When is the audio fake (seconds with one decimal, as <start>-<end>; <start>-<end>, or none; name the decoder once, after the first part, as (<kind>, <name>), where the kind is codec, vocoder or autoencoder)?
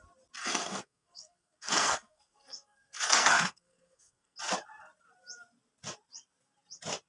0.4-4.4 (codec, SNAC)